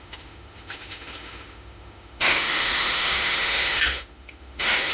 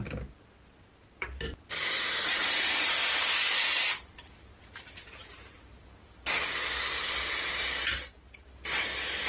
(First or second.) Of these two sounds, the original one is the second